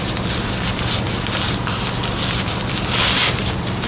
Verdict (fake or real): real